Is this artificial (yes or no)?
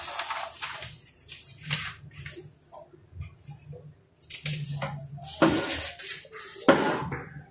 no